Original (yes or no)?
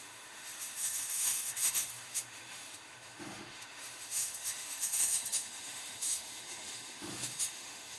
no